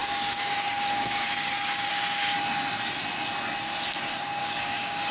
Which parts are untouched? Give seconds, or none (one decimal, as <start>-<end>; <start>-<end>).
1.9-4.4